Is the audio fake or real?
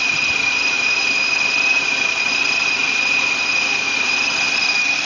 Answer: real